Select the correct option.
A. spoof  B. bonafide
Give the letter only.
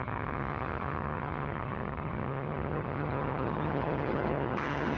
A